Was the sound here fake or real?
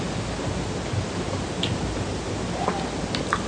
real